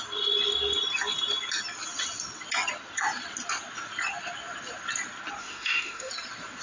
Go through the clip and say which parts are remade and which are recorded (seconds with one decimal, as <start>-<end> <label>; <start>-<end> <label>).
0.0-5.4 recorded; 5.4-6.1 remade; 6.1-6.6 recorded